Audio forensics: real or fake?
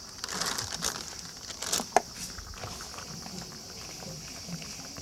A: real